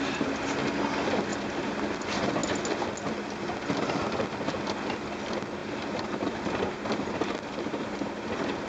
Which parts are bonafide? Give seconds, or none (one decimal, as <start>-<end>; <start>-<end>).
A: 0.0-1.3; 1.8-5.6; 8.1-8.7